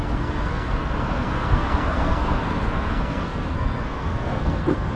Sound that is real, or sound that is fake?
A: fake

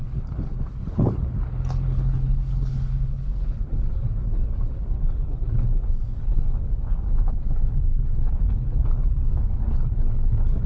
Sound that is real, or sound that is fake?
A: fake